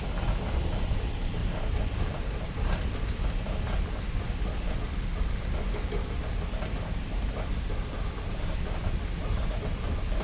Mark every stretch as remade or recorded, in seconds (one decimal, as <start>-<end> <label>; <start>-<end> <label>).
0.0-1.4 recorded; 1.4-3.2 remade; 3.2-10.2 recorded